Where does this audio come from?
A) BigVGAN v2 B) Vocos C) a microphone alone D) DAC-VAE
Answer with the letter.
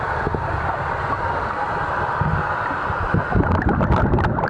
C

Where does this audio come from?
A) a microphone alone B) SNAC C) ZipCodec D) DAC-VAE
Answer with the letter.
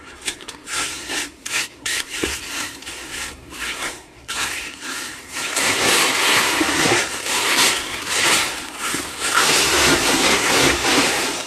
B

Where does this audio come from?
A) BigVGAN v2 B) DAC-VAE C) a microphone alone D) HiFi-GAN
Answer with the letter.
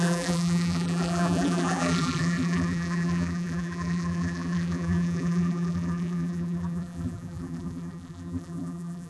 A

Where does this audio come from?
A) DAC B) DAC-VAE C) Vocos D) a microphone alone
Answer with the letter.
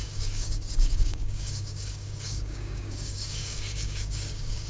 A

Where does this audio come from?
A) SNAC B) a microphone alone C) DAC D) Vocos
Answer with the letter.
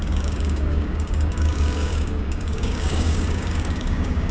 C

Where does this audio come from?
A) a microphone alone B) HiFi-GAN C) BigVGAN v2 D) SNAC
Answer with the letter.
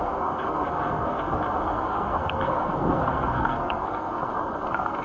D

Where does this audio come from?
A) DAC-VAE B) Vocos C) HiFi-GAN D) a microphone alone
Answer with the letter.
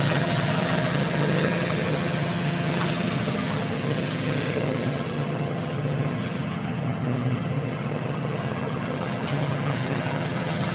C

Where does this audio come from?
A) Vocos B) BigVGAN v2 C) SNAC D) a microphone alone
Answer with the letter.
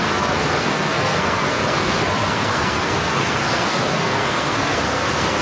C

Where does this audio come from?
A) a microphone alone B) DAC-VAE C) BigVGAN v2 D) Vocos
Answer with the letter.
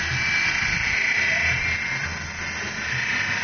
A